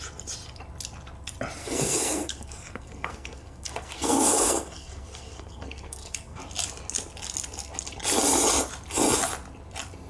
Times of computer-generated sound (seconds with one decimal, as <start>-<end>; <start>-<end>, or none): 1.6-6.4